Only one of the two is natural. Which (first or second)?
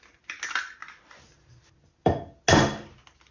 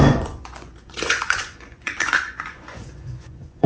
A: first